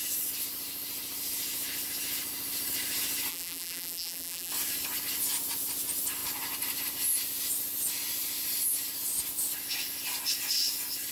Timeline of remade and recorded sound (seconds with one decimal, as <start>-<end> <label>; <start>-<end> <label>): 0.0-3.3 recorded; 3.3-4.5 remade; 4.5-11.1 recorded

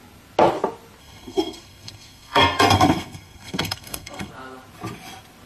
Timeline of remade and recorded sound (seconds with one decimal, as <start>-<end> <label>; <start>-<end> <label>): 0.0-1.0 recorded; 1.0-4.3 remade; 4.3-5.5 recorded